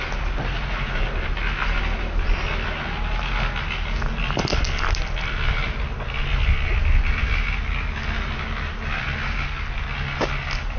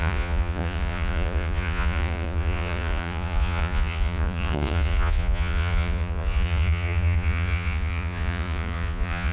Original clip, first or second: first